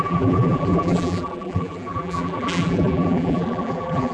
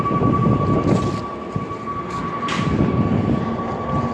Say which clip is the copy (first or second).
first